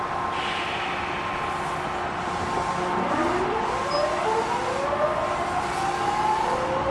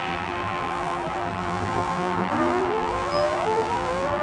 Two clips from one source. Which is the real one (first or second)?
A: first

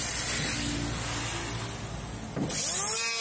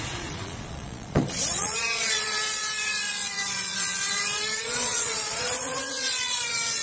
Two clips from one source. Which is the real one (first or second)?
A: first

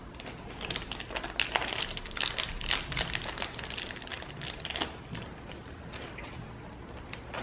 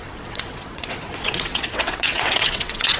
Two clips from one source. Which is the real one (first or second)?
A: first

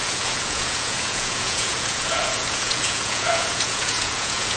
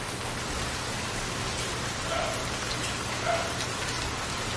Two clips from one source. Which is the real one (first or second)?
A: second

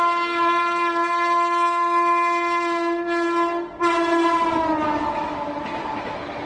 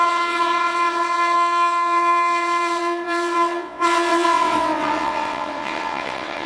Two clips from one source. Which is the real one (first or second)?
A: first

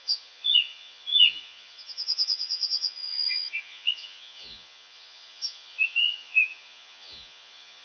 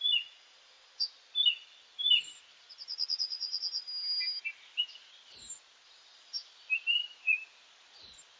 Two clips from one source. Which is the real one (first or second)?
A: second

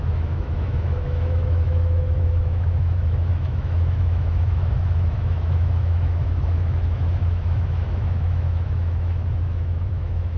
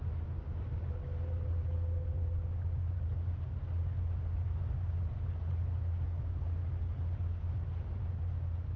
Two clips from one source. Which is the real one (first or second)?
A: second